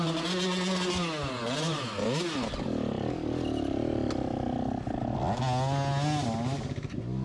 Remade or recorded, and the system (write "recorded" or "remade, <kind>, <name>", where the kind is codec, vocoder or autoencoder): recorded